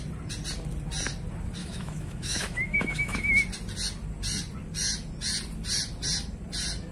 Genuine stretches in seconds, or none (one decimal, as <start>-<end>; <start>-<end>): 0.0-1.6; 3.4-6.9